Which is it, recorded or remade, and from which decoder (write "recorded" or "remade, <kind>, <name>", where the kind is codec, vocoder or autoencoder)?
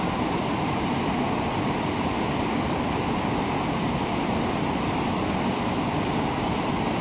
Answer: recorded